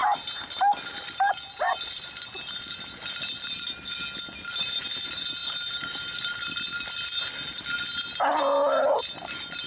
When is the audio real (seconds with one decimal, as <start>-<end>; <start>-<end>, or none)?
0.0-9.7